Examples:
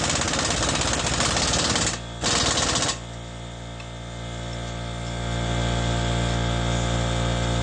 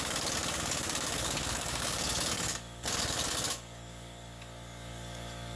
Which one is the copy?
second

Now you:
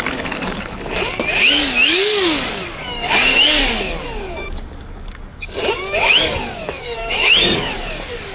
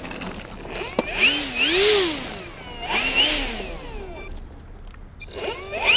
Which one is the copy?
first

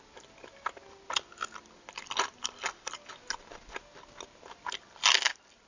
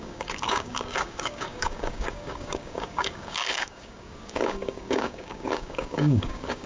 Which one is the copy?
second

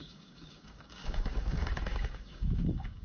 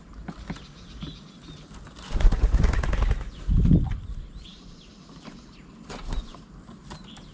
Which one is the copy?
first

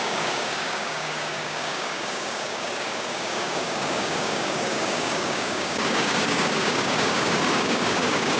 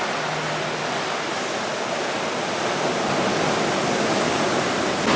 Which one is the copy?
first